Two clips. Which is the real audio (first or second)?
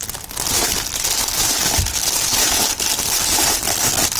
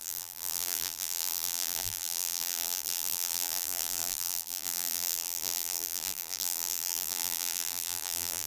first